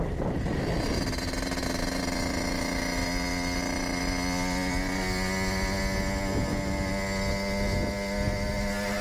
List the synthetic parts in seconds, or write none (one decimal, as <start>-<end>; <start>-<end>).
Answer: none